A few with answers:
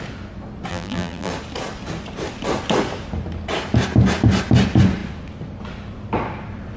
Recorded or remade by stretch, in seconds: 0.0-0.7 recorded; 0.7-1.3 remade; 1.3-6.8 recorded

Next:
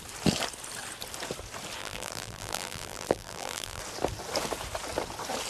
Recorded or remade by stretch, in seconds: 0.0-1.8 recorded; 1.8-3.8 remade; 3.8-5.5 recorded

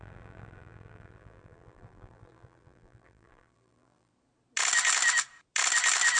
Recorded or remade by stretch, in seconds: 0.0-4.1 remade; 4.1-6.2 recorded

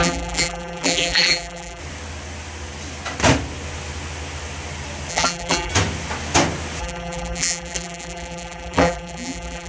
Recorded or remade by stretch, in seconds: 0.0-1.8 remade; 1.8-5.1 recorded; 5.1-5.7 remade; 5.7-6.8 recorded; 6.8-9.7 remade

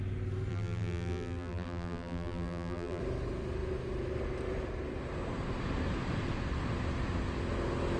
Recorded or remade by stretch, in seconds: 0.0-0.5 recorded; 0.5-3.0 remade; 3.0-8.0 recorded